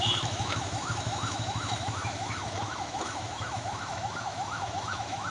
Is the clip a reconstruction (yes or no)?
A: yes